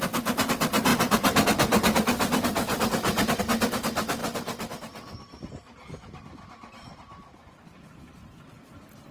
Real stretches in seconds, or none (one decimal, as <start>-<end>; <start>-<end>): 0.0-0.9; 3.4-4.2; 5.2-9.1